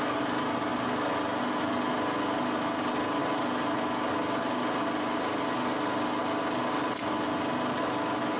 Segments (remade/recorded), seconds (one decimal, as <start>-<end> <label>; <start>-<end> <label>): 0.0-8.4 recorded